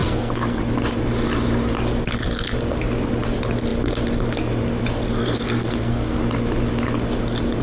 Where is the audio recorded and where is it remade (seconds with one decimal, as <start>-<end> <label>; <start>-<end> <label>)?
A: 0.0-0.6 remade; 0.6-5.2 recorded; 5.2-6.2 remade; 6.2-7.6 recorded